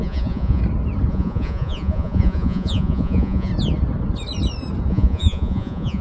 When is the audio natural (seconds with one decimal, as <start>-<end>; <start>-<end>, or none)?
0.6-1.1; 3.5-4.9

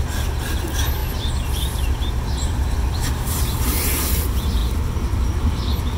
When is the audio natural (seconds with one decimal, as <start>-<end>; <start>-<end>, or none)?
0.0-1.0; 3.4-6.0

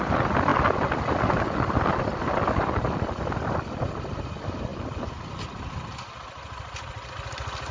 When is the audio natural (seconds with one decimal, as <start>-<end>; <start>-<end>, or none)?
0.0-7.7

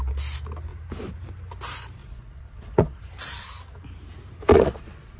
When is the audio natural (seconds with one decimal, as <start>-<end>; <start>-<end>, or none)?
0.0-2.0; 3.0-4.5

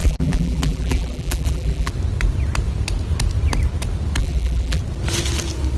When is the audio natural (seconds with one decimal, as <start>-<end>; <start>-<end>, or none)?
1.9-4.2; 4.8-5.8

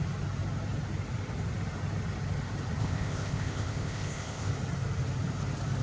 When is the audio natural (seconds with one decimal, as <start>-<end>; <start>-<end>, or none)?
0.0-2.8; 4.5-5.8

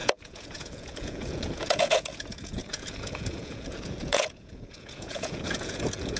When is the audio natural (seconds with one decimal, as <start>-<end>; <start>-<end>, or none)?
none